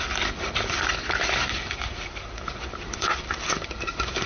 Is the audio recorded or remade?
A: remade